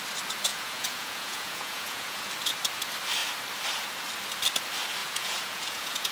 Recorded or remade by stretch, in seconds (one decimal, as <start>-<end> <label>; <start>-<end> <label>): 0.0-0.5 recorded; 0.5-2.3 remade; 2.3-5.0 recorded; 5.0-6.1 remade